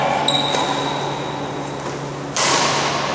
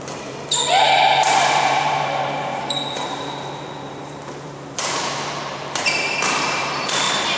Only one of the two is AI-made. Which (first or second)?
second